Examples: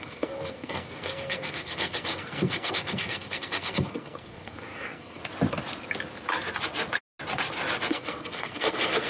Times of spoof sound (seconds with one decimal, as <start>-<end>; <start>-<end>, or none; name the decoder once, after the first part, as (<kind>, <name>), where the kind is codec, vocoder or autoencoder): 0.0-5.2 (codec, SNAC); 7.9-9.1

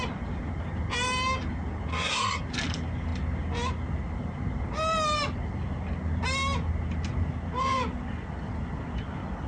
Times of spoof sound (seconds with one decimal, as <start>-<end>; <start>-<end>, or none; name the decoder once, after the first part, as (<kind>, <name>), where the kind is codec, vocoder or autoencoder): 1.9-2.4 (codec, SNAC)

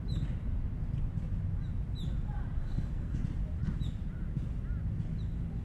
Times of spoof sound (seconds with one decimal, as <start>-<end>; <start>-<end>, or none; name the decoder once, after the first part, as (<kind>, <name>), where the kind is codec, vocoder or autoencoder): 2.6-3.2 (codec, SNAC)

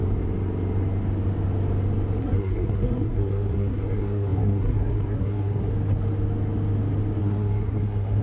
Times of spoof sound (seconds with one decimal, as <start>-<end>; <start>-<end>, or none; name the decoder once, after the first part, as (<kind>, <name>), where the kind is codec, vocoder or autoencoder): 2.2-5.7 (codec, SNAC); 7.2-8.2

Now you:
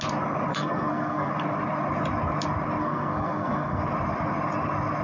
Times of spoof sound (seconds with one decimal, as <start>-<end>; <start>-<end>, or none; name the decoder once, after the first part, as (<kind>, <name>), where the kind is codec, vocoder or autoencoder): 0.5-1.3 (codec, SNAC); 2.8-3.8

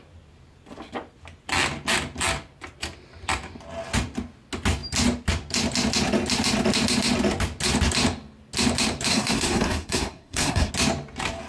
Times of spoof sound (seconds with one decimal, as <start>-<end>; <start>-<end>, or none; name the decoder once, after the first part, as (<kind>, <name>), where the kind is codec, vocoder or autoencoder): 9.1-10.7 (codec, SNAC)

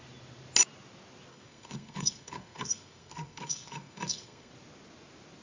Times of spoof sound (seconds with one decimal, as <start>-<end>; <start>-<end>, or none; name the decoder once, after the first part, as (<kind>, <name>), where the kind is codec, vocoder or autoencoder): 1.3-4.5 (codec, SNAC)

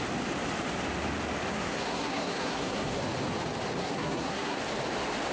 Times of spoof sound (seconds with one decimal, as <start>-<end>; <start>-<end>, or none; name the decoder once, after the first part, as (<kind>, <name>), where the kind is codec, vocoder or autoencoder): 1.5-3.0 (codec, SNAC); 3.8-4.6